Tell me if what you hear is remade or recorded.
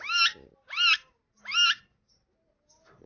recorded